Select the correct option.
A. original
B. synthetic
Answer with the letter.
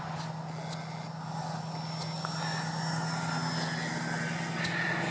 A